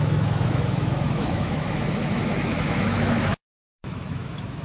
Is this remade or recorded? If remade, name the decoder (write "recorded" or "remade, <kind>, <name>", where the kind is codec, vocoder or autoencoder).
remade, autoencoder, DAC-VAE